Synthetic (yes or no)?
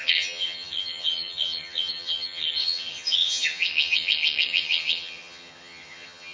yes